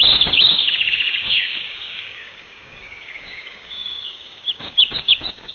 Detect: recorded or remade remade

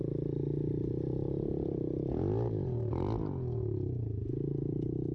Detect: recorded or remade recorded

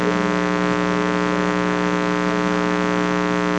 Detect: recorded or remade recorded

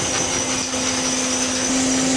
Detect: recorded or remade recorded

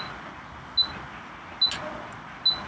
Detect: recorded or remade recorded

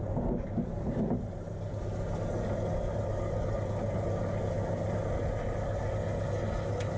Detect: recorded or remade recorded